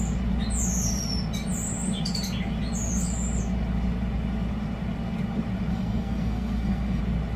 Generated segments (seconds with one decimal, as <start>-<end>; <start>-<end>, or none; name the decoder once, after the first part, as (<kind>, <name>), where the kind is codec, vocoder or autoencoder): 5.7-7.0 (codec, SNAC)